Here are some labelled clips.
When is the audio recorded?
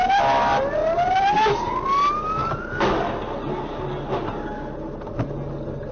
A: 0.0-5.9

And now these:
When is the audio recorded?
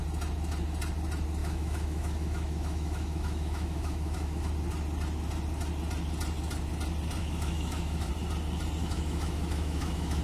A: 0.0-1.4; 4.5-7.2; 8.1-8.8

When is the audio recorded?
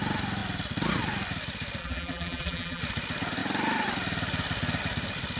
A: 0.0-1.8; 2.8-5.4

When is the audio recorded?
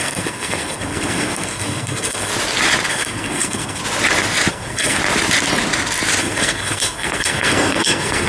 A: 2.3-2.9; 3.8-4.5; 5.0-6.2